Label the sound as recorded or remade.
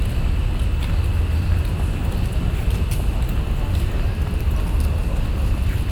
recorded